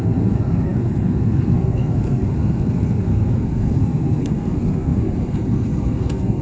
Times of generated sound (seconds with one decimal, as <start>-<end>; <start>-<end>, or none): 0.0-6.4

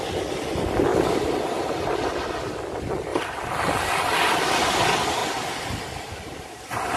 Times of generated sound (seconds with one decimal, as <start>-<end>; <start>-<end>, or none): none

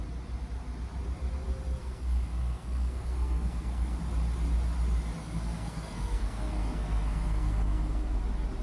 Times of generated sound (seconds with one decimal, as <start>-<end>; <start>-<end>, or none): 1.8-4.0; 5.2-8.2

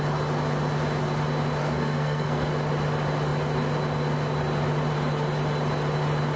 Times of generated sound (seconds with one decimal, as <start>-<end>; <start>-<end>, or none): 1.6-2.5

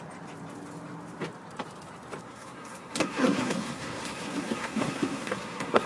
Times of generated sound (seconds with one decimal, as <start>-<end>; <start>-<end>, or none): 2.2-5.9